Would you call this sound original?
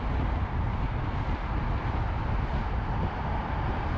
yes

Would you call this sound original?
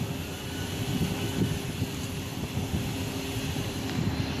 yes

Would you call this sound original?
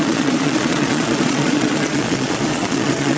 no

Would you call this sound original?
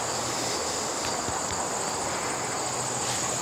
yes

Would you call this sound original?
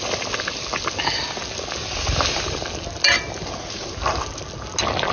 yes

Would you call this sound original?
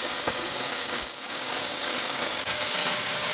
no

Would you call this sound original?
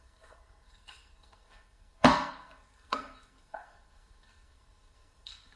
no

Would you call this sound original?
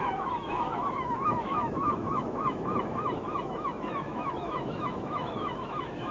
no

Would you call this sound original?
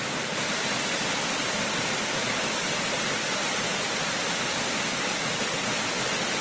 yes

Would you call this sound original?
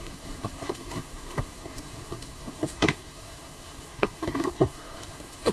no